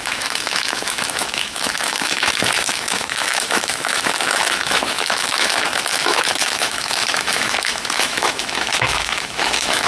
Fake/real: fake